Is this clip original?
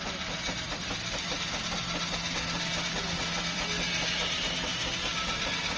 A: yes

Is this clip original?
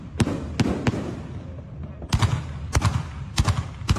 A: yes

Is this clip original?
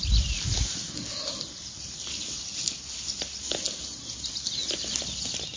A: yes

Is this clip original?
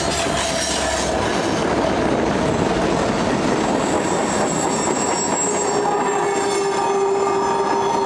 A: yes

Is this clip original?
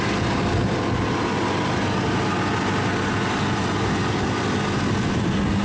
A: yes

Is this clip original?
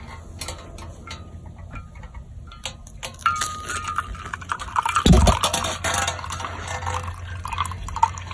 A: yes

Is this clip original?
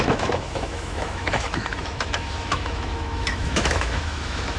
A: no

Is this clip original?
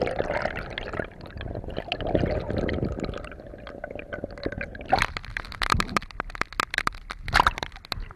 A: yes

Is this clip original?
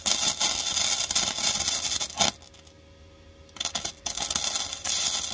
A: yes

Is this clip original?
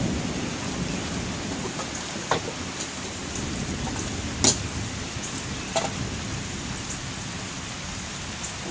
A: yes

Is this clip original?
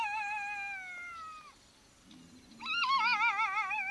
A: yes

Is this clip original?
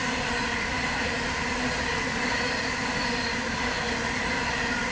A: yes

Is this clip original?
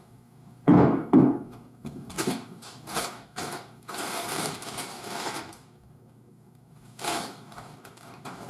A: no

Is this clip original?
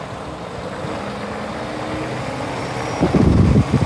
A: yes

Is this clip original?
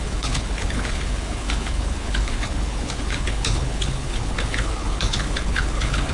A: no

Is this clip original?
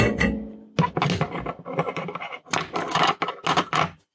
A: yes